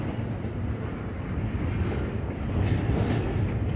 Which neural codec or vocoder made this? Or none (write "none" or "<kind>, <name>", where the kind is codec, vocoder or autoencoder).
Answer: none